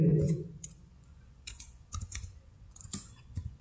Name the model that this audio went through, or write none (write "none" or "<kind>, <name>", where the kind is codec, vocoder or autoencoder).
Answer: vocoder, Vocos